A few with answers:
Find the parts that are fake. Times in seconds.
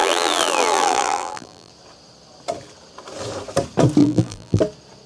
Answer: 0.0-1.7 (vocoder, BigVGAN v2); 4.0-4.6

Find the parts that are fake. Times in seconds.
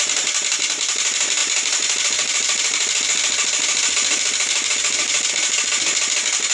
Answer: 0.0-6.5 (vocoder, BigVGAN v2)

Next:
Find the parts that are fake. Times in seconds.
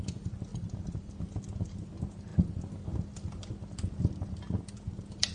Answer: 0.5-1.1 (vocoder, BigVGAN v2)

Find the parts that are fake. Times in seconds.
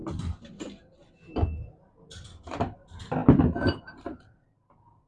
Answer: 2.4-3.2 (vocoder, BigVGAN v2); 3.8-5.1